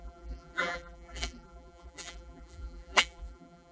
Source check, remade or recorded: remade